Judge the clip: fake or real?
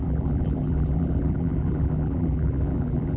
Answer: fake